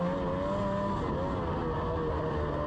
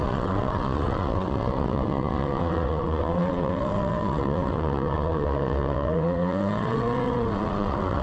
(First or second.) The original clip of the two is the first